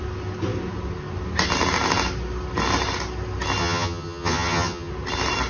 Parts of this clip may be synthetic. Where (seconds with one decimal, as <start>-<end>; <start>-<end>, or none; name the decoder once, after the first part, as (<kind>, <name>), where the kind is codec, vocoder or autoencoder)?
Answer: 3.6-4.9 (vocoder, HiFi-GAN)